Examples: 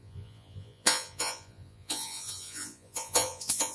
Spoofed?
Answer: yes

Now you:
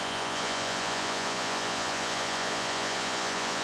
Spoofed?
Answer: yes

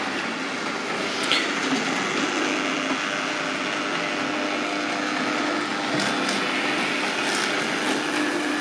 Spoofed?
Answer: no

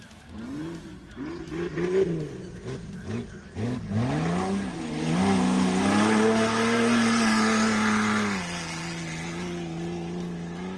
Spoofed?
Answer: no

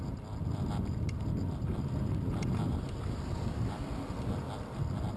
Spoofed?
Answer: no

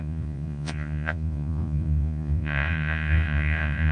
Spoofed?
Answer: yes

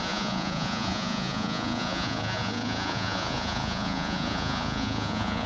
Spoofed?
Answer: yes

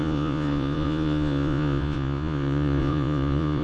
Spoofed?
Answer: yes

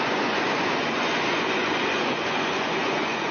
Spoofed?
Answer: yes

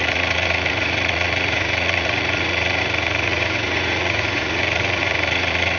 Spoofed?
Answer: yes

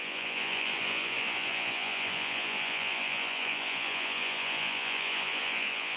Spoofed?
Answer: yes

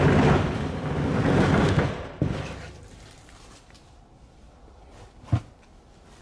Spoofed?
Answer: no